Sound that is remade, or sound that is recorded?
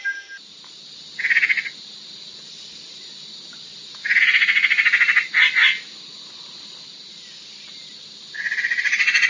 recorded